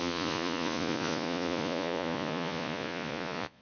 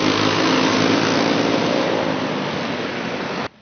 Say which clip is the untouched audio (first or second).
second